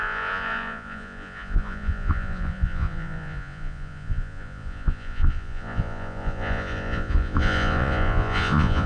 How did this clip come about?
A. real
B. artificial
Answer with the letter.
B